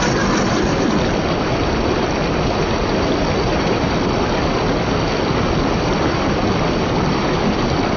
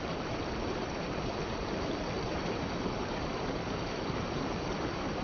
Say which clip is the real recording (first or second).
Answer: first